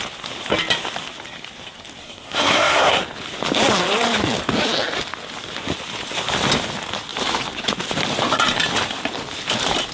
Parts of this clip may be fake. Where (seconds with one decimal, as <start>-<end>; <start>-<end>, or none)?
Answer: 2.0-3.0